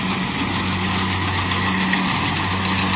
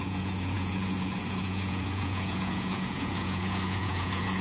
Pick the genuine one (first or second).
first